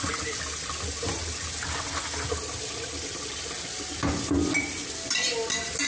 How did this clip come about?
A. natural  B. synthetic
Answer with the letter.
A